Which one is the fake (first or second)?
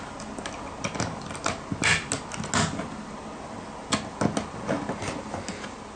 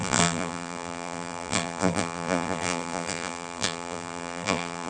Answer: second